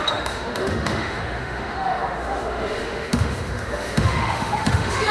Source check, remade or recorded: remade